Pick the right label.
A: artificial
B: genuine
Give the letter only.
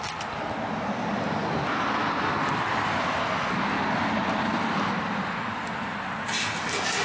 B